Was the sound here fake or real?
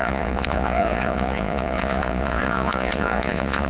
fake